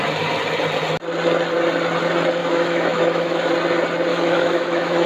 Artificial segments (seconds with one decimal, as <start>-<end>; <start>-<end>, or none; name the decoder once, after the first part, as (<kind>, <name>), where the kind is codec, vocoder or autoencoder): 2.4-3.5 (autoencoder, DAC-VAE); 4.1-5.1